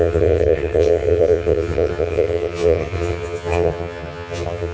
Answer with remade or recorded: remade